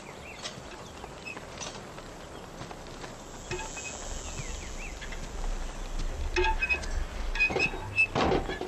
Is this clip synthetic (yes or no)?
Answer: no